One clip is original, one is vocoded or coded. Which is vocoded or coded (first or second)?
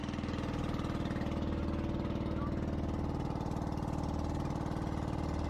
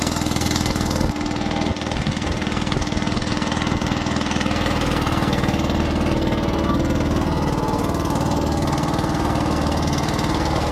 second